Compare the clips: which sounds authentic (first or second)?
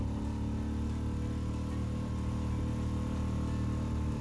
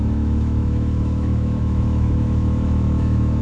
first